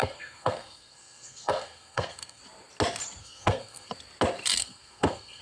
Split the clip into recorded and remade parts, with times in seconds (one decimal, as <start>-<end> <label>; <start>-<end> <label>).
0.0-2.4 remade; 2.4-3.2 recorded; 3.2-3.9 remade; 3.9-4.6 recorded; 4.6-5.4 remade